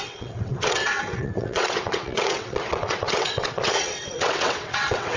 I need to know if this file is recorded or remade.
remade